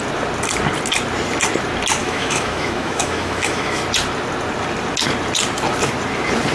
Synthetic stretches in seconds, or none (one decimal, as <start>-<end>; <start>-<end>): 2.0-3.8